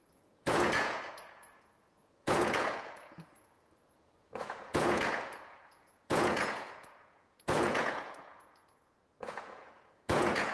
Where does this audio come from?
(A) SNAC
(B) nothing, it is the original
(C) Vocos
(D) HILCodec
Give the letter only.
C